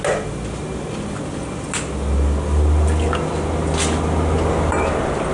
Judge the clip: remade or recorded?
recorded